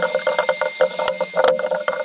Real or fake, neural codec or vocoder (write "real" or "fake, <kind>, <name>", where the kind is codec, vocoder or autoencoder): real